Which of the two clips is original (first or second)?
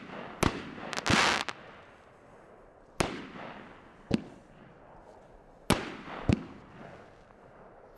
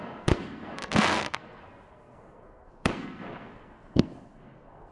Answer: first